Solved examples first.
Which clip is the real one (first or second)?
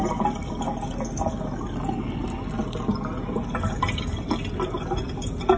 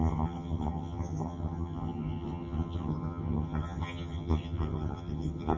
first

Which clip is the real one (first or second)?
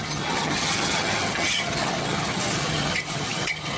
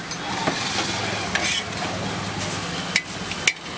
second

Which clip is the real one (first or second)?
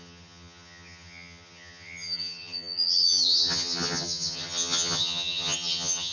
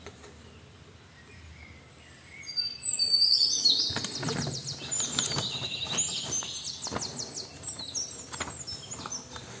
second